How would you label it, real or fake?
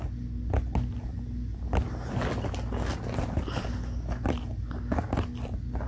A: real